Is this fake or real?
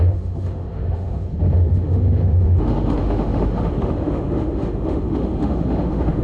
fake